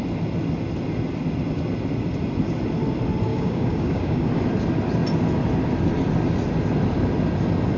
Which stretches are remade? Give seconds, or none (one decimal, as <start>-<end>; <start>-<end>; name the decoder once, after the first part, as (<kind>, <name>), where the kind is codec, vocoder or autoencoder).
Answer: 3.3-4.3 (codec, DAC)